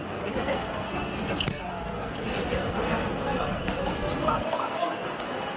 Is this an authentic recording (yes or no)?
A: no